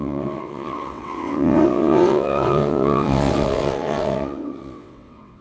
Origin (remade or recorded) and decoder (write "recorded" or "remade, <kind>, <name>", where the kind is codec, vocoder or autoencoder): remade, vocoder, WaveNeXt